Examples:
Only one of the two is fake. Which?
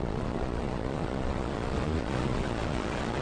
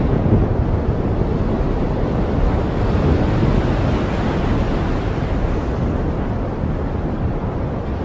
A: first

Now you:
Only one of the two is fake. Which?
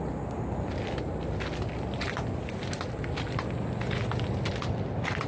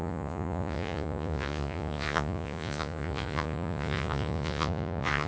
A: second